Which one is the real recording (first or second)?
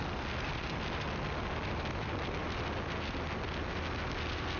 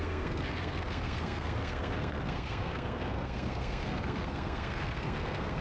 first